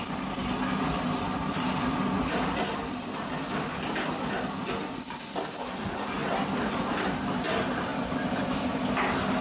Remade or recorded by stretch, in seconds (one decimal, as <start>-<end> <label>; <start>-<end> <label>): 0.0-9.4 recorded